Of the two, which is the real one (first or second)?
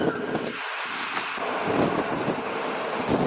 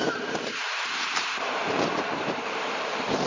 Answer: first